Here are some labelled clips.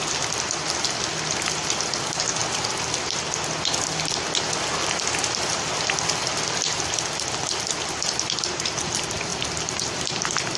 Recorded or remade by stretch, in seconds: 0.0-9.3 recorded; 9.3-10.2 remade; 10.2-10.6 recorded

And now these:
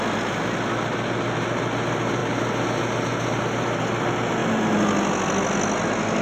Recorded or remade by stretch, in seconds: 0.0-6.2 recorded